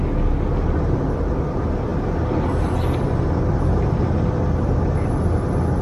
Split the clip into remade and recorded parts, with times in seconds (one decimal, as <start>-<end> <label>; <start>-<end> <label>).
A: 0.0-5.8 recorded